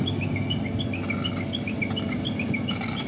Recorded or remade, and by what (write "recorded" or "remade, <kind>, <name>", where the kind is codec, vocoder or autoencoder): recorded